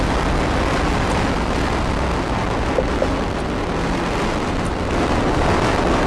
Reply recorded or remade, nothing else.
recorded